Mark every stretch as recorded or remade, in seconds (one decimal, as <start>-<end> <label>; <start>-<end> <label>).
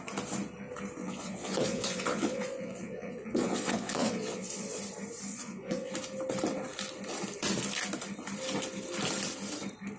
0.0-1.0 recorded; 1.0-4.8 remade; 4.8-5.3 recorded; 5.3-5.9 remade; 5.9-10.0 recorded